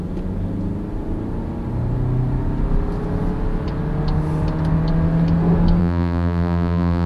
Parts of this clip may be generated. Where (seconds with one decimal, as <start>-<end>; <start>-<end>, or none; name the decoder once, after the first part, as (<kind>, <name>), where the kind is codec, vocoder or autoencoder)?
5.8-7.1 (vocoder, BigVGAN v2)